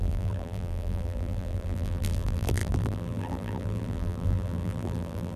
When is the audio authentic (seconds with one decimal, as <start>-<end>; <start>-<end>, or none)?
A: none